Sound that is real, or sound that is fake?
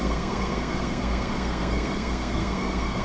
fake